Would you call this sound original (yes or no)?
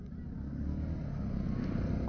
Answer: yes